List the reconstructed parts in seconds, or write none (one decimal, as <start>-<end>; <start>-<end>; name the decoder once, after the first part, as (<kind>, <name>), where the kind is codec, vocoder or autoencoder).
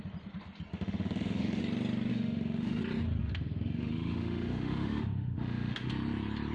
0.7-1.6 (autoencoder, DAC-VAE); 2.1-2.8; 3.2-5.9